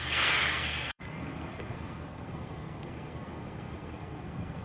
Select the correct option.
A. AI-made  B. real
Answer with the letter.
A